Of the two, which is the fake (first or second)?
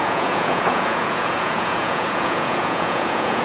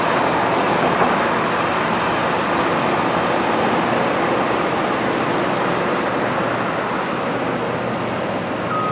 first